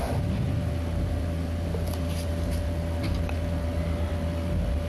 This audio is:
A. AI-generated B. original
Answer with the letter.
B